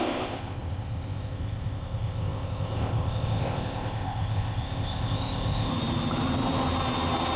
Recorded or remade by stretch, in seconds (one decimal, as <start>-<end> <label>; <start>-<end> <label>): 0.0-5.7 remade; 5.7-7.4 recorded